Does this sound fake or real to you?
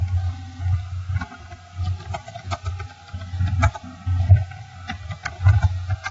real